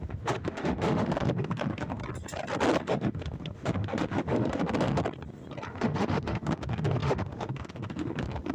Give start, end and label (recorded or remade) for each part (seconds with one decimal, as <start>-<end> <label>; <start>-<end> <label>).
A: 0.0-2.0 remade; 2.0-2.8 recorded; 2.8-5.0 remade; 5.0-5.7 recorded; 5.7-8.5 remade